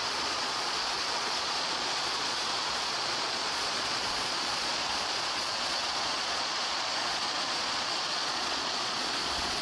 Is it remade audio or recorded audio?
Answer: remade